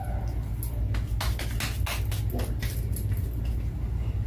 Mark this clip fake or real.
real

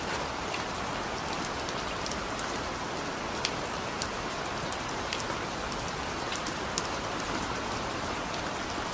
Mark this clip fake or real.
real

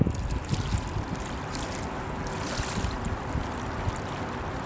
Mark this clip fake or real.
real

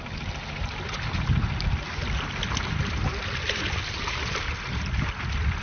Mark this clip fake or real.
real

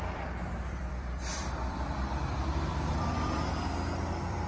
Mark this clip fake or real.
fake